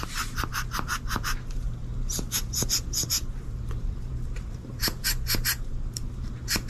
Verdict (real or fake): fake